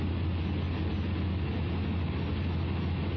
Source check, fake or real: real